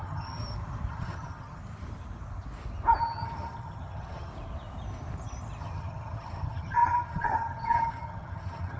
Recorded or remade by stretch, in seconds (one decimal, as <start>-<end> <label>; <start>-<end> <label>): 0.0-0.4 remade; 0.4-0.9 recorded; 0.9-1.6 remade; 1.6-3.0 recorded; 3.0-4.3 remade; 4.3-5.6 recorded; 5.6-8.8 remade